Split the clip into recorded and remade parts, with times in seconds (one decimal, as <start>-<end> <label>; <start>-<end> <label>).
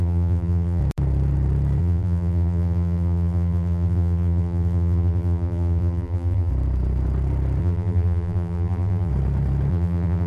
0.0-0.8 remade; 0.8-1.8 recorded; 1.8-6.5 remade; 6.5-7.6 recorded; 7.6-9.1 remade; 9.1-9.7 recorded; 9.7-10.3 remade